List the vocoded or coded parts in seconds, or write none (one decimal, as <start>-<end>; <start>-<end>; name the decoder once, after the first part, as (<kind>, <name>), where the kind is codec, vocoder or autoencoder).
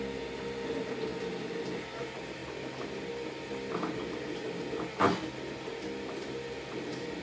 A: none